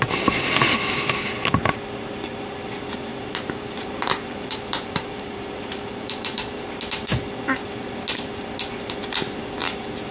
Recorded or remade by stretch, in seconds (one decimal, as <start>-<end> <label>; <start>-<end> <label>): 0.0-3.1 recorded; 3.1-6.6 remade; 6.6-10.1 recorded